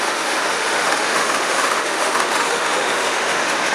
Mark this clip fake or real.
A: fake